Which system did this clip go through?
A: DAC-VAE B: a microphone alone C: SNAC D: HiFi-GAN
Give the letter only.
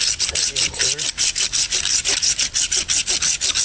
B